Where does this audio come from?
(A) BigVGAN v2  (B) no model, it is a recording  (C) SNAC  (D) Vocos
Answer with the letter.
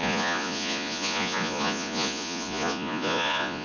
D